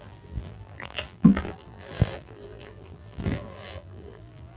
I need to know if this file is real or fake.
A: fake